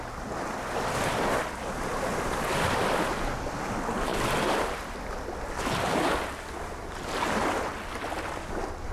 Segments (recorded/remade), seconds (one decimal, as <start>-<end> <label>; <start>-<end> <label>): 0.0-8.9 recorded